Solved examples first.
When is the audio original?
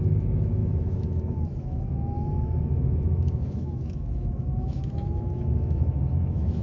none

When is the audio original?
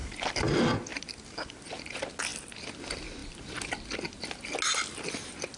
0.0-5.6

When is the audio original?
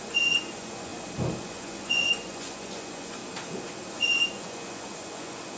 0.9-1.4; 3.2-3.9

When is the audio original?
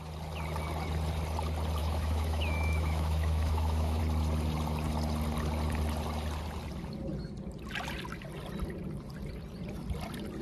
0.0-1.8; 4.0-10.4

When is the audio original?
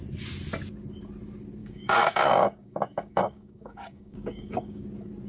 0.0-1.6; 4.8-5.3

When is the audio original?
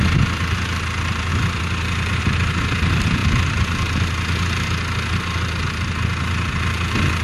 0.0-1.3; 2.2-7.2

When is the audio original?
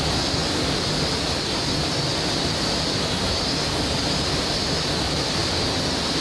0.0-6.2